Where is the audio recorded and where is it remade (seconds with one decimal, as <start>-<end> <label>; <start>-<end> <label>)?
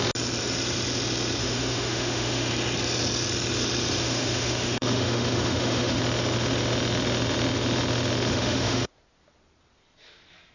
0.0-1.4 recorded; 1.4-2.5 remade; 2.5-4.0 recorded; 4.0-6.0 remade; 6.0-8.3 recorded; 8.3-8.9 remade; 8.9-10.5 recorded